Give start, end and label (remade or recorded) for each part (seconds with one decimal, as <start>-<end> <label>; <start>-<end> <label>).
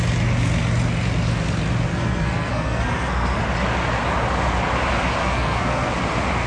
0.0-1.9 recorded; 1.9-3.4 remade; 3.4-5.2 recorded; 5.2-5.9 remade; 5.9-6.5 recorded